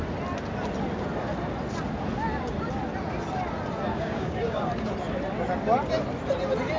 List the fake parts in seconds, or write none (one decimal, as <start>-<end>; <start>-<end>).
3.9-4.6